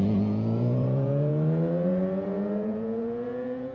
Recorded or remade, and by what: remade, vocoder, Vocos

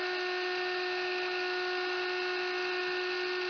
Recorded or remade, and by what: recorded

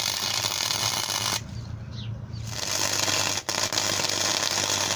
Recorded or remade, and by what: recorded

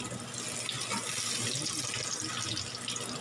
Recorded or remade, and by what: recorded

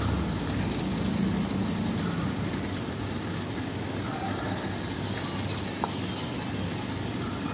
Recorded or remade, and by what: recorded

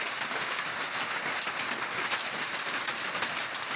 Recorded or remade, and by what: recorded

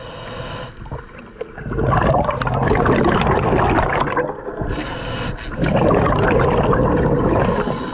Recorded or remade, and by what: recorded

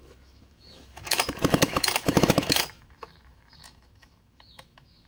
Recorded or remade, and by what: remade, autoencoder, DAC-VAE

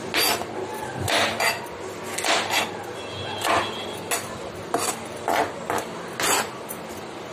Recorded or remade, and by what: recorded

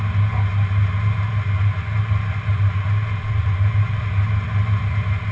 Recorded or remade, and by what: recorded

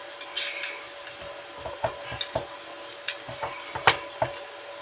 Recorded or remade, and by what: recorded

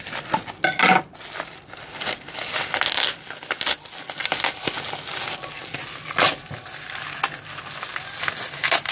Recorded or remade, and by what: recorded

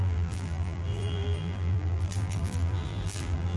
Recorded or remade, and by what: remade, vocoder, BigVGAN v2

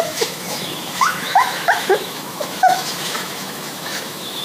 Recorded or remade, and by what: remade, autoencoder, DAC-VAE